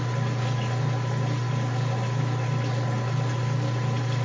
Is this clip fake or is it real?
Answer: real